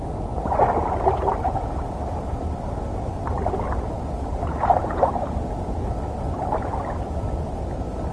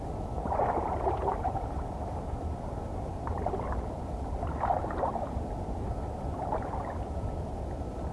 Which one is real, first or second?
first